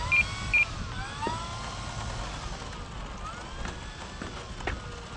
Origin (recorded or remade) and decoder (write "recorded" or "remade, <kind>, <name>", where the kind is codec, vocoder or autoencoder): recorded